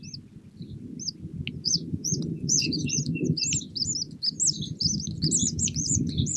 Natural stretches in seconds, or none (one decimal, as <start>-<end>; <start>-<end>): 0.0-1.6; 3.0-5.4

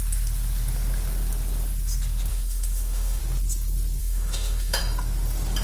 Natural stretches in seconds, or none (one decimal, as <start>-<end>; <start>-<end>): 0.0-2.3; 3.2-4.0; 4.8-5.6